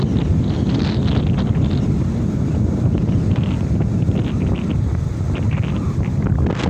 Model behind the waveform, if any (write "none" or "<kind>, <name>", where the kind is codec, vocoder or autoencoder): none